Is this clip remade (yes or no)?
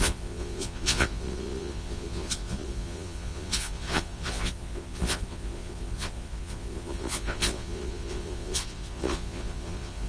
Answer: yes